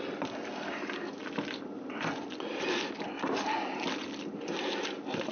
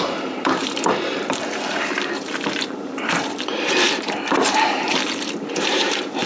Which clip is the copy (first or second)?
second